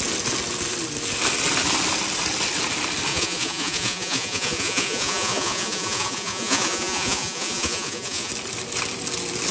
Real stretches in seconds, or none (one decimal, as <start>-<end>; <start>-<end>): 0.0-3.1; 8.3-9.5